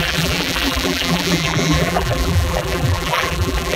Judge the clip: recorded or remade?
remade